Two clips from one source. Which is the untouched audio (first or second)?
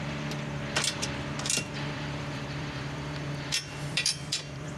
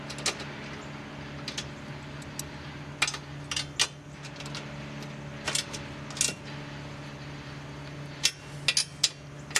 second